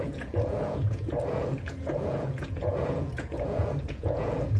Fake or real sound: fake